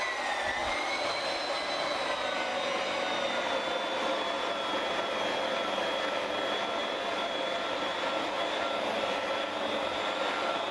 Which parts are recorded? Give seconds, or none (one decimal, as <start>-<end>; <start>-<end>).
0.0-0.6; 1.4-6.8; 8.4-10.7